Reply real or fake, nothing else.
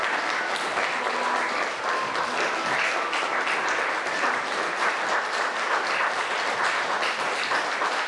real